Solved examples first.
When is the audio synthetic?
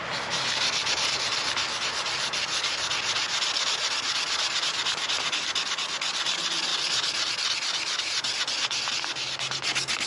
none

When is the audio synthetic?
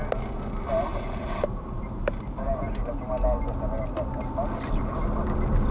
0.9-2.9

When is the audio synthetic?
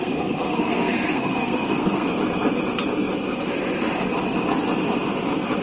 0.0-2.2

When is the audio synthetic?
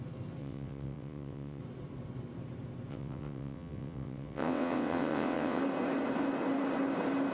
0.4-1.6; 2.9-5.6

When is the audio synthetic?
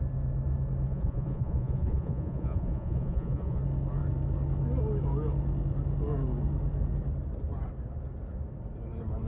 0.9-3.6